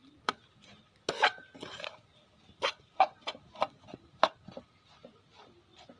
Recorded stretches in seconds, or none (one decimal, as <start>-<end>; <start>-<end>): 0.0-6.0